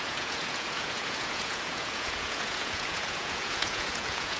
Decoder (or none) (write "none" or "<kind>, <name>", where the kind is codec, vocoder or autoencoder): vocoder, Vocos